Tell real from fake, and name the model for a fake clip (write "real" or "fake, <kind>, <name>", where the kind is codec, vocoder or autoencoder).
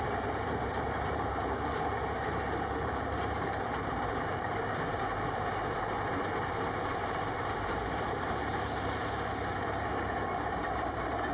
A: fake, vocoder, BigVGAN v2